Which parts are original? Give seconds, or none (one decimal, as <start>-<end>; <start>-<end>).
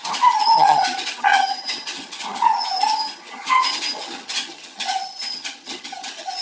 none